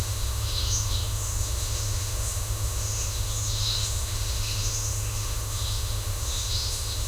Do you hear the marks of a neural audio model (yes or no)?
yes